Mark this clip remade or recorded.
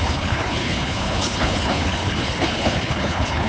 remade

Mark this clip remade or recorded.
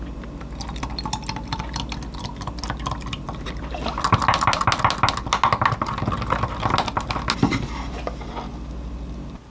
recorded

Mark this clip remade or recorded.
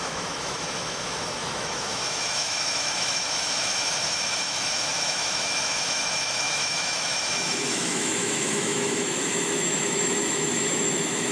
remade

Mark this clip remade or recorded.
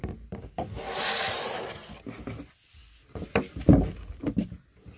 recorded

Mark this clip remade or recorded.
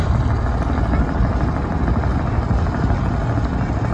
recorded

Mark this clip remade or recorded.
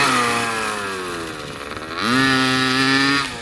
recorded